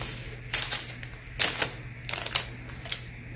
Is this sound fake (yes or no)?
no